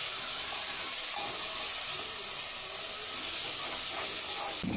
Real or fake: real